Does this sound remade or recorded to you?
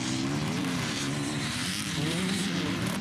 remade